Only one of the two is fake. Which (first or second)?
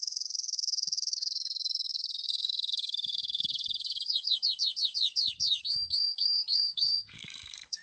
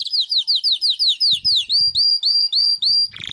first